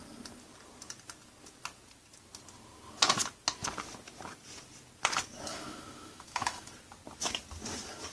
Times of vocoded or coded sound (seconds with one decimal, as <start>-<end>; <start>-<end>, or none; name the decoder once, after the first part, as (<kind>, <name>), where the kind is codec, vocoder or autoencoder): 5.5-6.7 (autoencoder, DAC-VAE)